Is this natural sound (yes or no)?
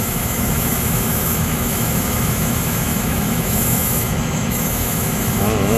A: no